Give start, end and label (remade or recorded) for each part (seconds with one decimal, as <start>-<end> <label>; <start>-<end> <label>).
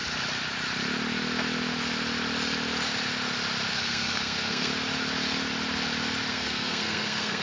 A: 0.0-3.7 recorded; 3.7-4.7 remade; 4.7-6.3 recorded; 6.3-7.4 remade